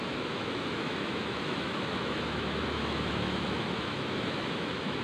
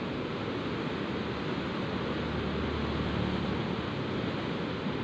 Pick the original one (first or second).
second